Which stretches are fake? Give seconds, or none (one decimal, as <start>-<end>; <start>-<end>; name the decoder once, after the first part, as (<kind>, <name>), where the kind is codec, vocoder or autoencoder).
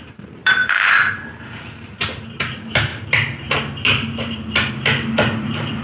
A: 0.0-2.9 (vocoder, BigVGAN v2); 4.7-5.8